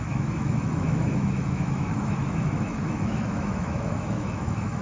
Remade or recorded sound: remade